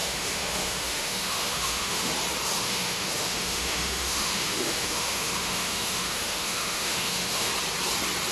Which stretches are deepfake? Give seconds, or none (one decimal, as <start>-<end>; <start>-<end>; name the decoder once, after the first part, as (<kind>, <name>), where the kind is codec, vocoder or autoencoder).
0.0-2.1 (autoencoder, DAC-VAE); 2.6-7.5